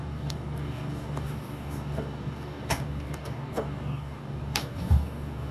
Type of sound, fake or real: fake